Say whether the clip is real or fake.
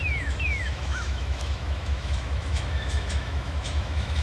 fake